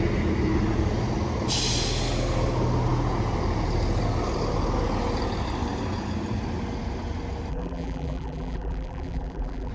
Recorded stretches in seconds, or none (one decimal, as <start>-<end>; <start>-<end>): 0.0-7.5